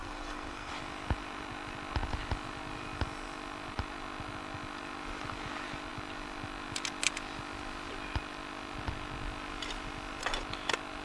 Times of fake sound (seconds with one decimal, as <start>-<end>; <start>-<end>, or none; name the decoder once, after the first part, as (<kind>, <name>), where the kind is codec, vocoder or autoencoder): 0.0-0.7 (codec, SNAC)